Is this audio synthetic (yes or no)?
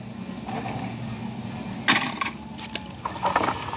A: no